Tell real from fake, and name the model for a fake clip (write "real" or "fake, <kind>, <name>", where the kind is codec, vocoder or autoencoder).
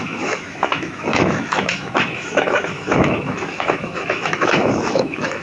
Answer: fake, autoencoder, DAC-VAE